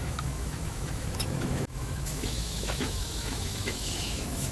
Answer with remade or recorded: remade